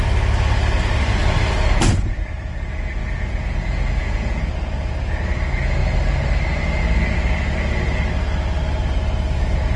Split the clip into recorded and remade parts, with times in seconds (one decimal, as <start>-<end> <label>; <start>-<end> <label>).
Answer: 0.0-3.0 recorded; 3.0-4.5 remade; 4.5-9.8 recorded